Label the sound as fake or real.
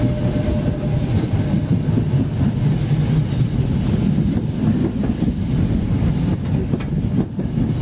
real